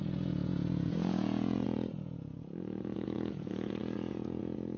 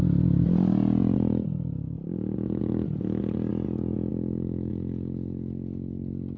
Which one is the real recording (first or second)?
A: second